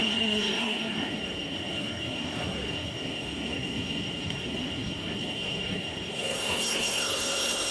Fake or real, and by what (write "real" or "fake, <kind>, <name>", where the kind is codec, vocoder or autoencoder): fake, codec, SNAC